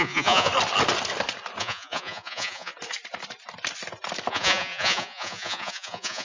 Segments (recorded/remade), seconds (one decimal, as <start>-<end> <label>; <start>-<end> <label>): 0.0-0.5 remade; 0.5-1.6 recorded; 1.6-2.7 remade; 2.7-4.3 recorded; 4.3-6.2 remade